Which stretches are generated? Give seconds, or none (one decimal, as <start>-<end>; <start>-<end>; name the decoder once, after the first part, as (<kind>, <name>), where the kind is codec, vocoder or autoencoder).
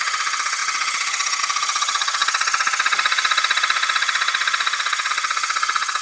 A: 0.0-6.0 (vocoder, HiFi-GAN)